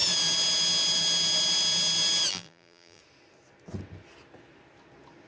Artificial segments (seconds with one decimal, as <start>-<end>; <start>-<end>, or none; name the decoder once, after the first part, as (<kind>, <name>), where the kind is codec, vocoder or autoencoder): 2.3-3.0 (vocoder, BigVGAN v2)